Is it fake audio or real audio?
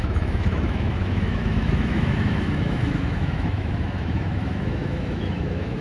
fake